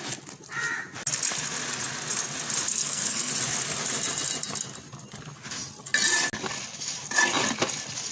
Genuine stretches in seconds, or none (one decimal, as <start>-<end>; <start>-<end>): 0.0-2.7; 3.3-8.1